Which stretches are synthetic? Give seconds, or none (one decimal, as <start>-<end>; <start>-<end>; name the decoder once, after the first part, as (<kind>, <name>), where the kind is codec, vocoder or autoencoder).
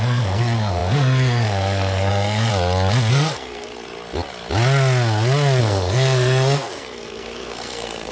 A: 0.0-2.5 (codec, SNAC); 3.1-3.7; 5.6-8.1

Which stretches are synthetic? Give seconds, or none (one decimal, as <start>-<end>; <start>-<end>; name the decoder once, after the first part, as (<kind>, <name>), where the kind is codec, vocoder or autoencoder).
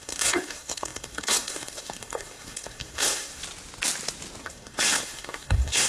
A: 0.0-3.4 (codec, SNAC); 4.4-5.9